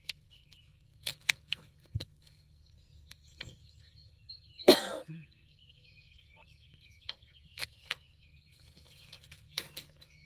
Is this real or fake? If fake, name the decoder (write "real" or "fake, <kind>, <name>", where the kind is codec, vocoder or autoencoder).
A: fake, codec, SNAC